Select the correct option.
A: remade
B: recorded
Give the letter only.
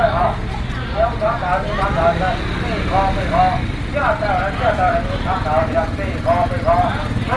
B